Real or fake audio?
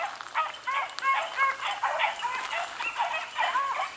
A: real